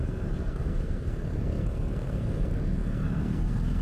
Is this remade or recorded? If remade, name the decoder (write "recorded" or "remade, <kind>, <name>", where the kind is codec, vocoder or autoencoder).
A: remade, codec, SNAC